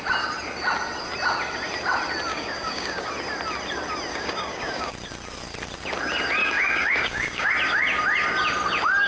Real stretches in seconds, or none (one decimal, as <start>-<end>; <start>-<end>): 0.0-2.3; 3.1-4.1; 4.9-6.4; 7.5-9.1